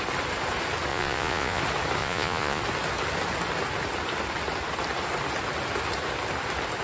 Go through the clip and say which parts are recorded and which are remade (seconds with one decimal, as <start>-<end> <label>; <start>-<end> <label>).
0.0-0.9 recorded; 0.9-1.6 remade; 1.6-2.0 recorded; 2.0-2.6 remade; 2.6-6.8 recorded